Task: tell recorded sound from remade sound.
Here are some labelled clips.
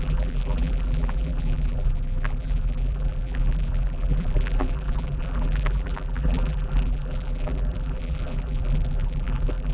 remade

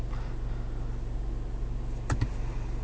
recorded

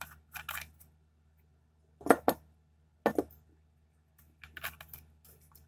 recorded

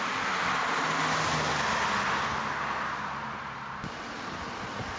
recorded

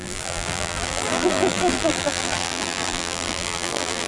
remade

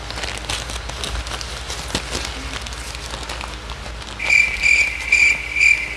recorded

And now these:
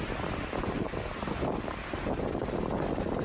recorded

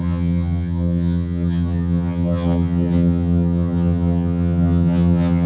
remade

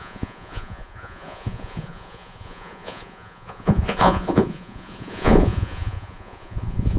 remade